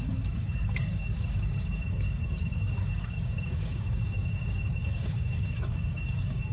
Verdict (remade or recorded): remade